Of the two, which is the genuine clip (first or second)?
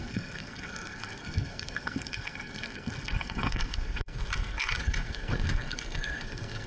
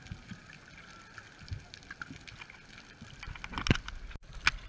second